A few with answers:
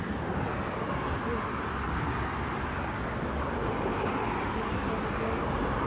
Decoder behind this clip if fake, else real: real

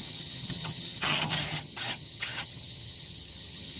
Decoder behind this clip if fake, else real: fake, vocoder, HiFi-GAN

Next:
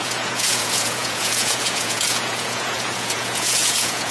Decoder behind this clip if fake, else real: fake, vocoder, Vocos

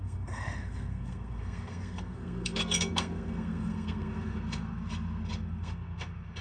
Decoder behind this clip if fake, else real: fake, codec, SNAC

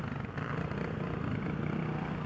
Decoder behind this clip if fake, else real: real